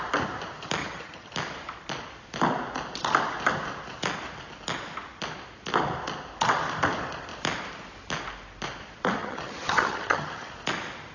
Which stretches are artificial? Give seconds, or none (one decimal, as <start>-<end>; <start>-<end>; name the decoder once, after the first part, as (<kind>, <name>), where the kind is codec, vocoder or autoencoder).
0.8-1.3 (vocoder, HiFi-GAN); 9.2-10.5